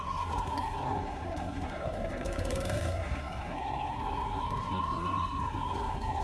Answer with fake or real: fake